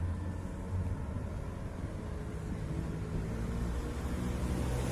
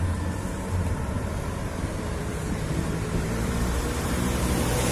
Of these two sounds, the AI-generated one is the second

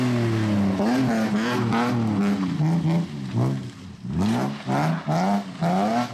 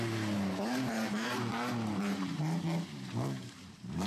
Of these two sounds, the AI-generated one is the second